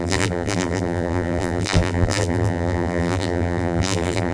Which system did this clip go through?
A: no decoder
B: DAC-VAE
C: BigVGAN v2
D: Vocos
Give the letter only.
C